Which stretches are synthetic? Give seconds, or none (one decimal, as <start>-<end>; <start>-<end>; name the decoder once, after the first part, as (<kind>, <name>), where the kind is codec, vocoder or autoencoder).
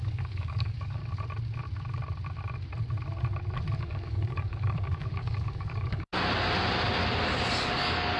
0.0-1.0 (codec, DAC); 3.8-6.1; 7.6-8.2